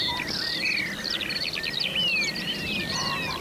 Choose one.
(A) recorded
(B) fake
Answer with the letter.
A